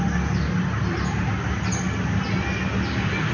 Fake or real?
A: real